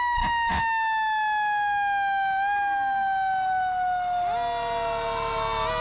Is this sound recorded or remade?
recorded